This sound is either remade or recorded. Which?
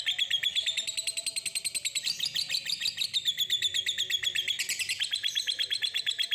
recorded